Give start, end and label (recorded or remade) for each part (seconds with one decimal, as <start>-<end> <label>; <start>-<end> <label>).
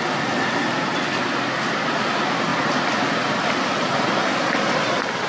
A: 0.0-5.3 recorded